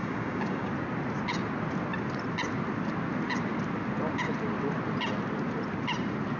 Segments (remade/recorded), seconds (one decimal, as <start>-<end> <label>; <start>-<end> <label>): 0.0-0.7 remade; 0.7-6.4 recorded